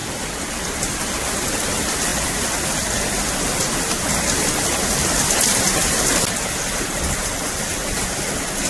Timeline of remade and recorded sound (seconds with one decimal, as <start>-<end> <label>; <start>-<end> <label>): 0.0-8.7 recorded